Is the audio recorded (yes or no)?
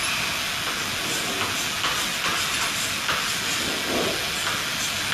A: yes